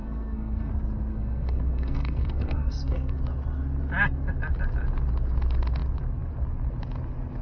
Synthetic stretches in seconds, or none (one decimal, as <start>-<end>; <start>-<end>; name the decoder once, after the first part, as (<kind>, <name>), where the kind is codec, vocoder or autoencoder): 0.0-0.7 (codec, SNAC); 1.1-3.2